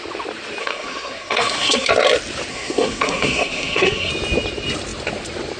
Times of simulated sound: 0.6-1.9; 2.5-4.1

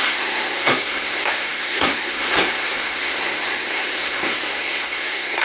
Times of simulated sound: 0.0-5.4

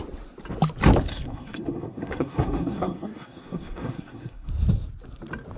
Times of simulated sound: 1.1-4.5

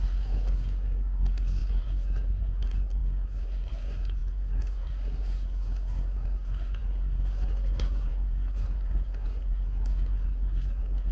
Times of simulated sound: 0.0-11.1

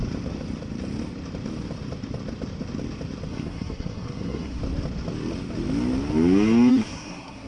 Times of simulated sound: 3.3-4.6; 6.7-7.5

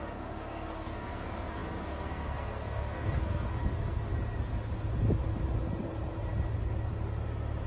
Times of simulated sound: 0.0-4.1